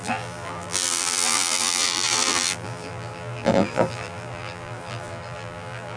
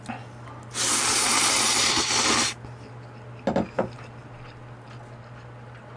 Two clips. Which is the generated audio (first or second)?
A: first